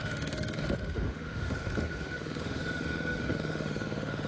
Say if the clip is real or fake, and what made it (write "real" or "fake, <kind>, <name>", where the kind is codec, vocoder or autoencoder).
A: fake, autoencoder, DAC-VAE